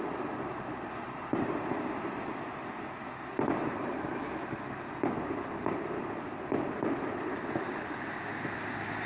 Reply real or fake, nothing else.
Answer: real